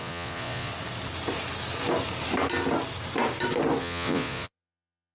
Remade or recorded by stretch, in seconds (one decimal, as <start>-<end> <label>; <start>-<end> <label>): 0.0-0.7 remade; 0.7-3.8 recorded; 3.8-5.1 remade